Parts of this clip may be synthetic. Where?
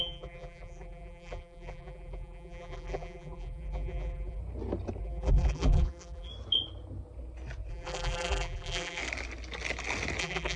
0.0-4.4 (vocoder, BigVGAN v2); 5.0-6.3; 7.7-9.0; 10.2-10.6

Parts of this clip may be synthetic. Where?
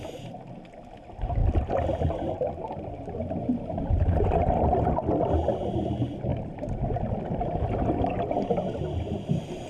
1.4-4.4 (vocoder, BigVGAN v2); 6.3-7.0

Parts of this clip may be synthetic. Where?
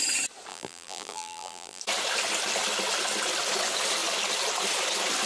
0.5-1.8 (vocoder, BigVGAN v2)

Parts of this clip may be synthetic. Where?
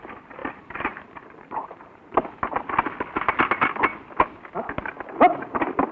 0.4-2.3 (vocoder, BigVGAN v2)